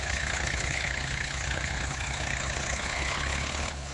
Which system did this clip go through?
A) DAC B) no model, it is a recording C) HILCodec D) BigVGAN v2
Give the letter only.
C